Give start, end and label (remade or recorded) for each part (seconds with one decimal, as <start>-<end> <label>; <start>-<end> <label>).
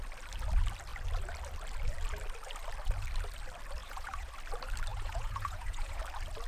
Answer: 0.0-3.8 recorded; 3.8-4.3 remade; 4.3-4.9 recorded; 4.9-6.0 remade; 6.0-6.5 recorded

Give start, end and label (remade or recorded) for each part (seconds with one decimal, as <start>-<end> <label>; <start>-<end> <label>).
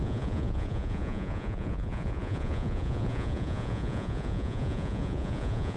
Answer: 0.0-5.8 remade